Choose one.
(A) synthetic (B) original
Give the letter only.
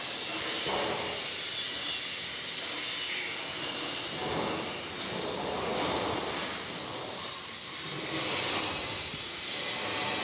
B